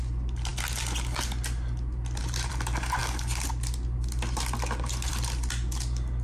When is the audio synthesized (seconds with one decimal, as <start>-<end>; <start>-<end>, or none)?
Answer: none